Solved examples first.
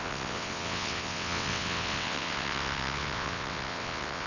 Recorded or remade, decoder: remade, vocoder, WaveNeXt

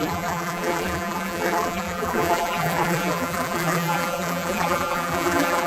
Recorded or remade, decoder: remade, vocoder, BigVGAN v2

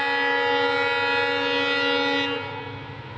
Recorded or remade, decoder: recorded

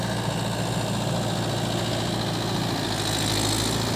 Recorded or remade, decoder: recorded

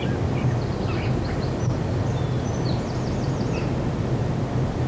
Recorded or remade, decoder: recorded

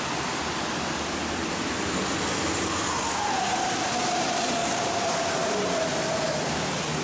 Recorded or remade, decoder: remade, vocoder, BigVGAN v2